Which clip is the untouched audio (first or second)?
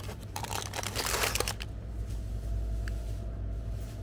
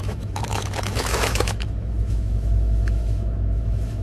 first